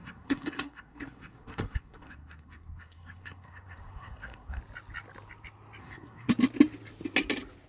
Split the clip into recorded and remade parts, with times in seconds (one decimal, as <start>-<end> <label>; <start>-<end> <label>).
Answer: 0.0-4.6 remade; 4.6-5.8 recorded; 5.8-6.3 remade; 6.3-7.7 recorded